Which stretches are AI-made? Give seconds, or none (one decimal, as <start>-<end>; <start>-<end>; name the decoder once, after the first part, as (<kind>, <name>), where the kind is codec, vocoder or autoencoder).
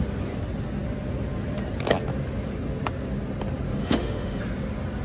3.8-4.4 (autoencoder, DAC-VAE)